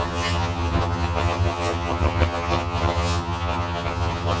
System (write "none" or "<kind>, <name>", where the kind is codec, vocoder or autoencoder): vocoder, HiFi-GAN